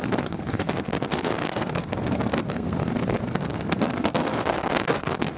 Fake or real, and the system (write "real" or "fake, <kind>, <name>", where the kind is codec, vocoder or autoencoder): fake, codec, SNAC